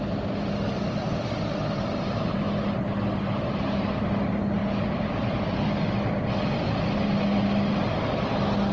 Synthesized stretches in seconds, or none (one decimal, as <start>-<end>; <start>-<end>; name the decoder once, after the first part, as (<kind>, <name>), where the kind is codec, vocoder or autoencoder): none